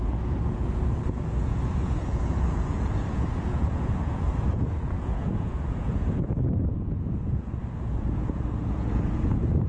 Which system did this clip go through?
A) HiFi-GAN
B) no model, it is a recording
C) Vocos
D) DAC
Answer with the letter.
C